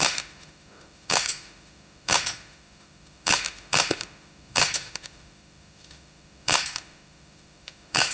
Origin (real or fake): fake